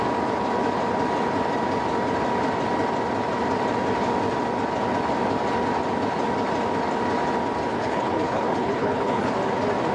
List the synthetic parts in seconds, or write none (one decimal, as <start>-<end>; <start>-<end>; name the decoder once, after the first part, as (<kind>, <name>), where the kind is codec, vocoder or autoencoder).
7.7-9.3 (codec, HILCodec)